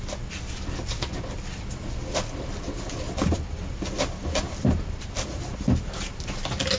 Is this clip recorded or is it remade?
recorded